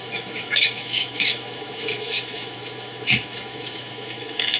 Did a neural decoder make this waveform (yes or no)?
yes